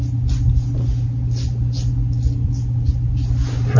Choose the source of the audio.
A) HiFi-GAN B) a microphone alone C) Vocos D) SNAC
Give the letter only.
B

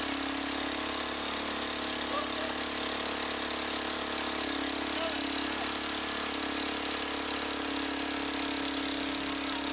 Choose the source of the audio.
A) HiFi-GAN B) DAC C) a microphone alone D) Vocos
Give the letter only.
C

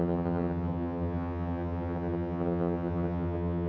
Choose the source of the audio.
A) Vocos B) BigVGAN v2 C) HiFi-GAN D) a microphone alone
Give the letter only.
C